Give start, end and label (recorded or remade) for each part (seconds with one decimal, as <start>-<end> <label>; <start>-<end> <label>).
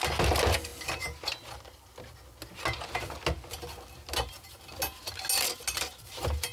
0.0-6.5 recorded